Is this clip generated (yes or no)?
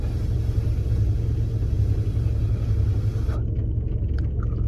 no